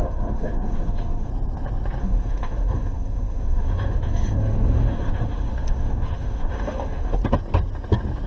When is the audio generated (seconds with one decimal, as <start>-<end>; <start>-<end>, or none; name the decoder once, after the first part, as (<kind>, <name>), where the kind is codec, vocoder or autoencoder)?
0.0-1.3 (autoencoder, DAC-VAE); 2.0-7.2